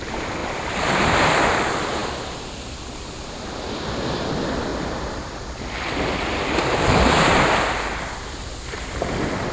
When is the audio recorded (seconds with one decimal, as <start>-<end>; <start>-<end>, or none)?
4.7-8.0